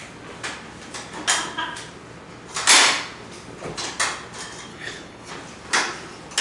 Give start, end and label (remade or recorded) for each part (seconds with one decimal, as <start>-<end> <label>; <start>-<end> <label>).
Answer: 0.0-4.7 recorded; 4.7-5.3 remade; 5.3-6.4 recorded